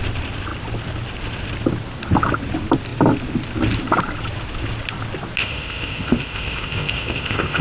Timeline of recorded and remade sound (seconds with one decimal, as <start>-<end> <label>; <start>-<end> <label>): 0.0-5.4 recorded; 5.4-7.6 remade